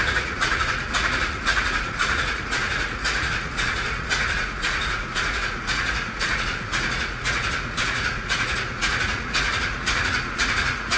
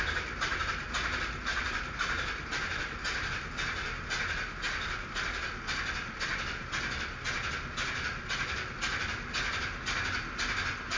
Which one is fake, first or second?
first